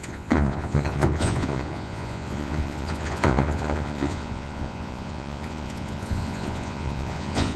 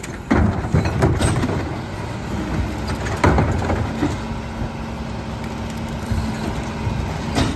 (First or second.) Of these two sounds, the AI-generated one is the first